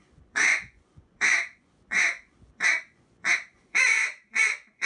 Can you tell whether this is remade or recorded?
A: remade